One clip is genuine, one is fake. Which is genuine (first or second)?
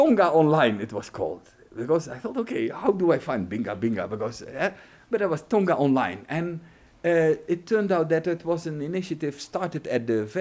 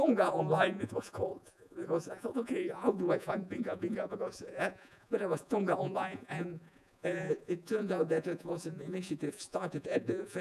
first